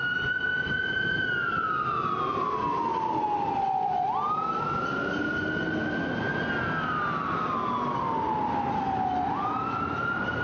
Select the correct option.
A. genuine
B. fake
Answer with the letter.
A